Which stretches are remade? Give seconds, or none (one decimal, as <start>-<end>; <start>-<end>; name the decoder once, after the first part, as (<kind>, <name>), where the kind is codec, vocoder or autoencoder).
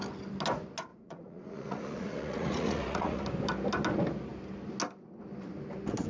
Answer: 0.9-3.2 (vocoder, Vocos)